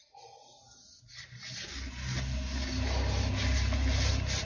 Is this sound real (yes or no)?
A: yes